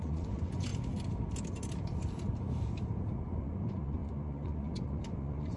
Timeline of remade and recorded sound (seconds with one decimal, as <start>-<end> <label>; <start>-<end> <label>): 0.0-0.7 remade; 0.7-3.4 recorded; 3.4-5.6 remade